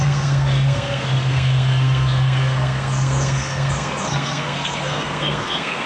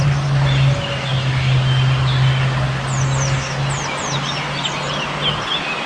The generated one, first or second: first